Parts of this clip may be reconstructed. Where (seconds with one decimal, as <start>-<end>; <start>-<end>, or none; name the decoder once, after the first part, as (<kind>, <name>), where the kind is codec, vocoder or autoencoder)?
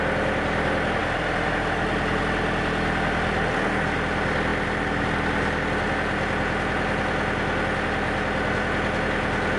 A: 1.0-2.2 (vocoder, BigVGAN v2)